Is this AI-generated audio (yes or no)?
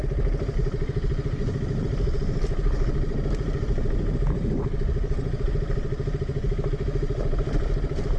no